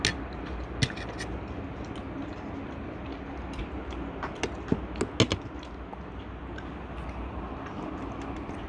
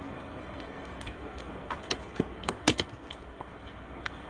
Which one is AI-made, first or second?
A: second